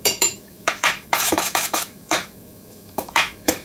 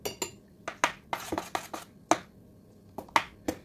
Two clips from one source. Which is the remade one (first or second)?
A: first